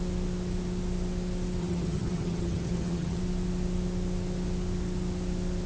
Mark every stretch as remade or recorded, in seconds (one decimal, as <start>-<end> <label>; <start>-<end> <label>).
0.0-1.6 recorded; 1.6-3.2 remade; 3.2-5.7 recorded